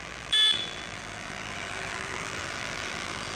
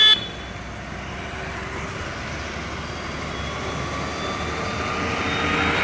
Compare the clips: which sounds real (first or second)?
second